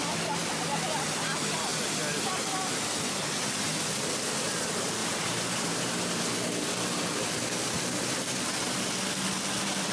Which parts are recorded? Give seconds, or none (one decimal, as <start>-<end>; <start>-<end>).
0.0-5.0; 6.4-9.9